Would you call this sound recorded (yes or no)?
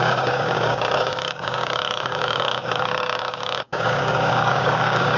no